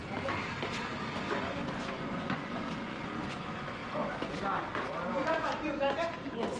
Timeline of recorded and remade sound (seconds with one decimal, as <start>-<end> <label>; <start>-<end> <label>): 0.0-1.7 recorded; 1.7-3.8 remade; 3.8-6.6 recorded